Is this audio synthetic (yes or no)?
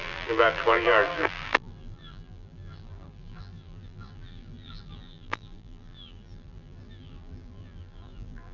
yes